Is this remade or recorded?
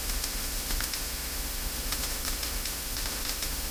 remade